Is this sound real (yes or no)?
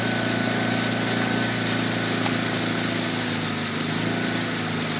yes